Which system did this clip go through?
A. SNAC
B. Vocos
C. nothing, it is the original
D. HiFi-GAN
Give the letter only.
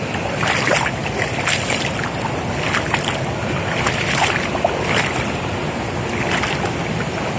C